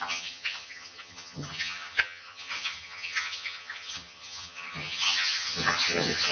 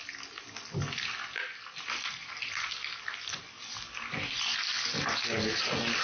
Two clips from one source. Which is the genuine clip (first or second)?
second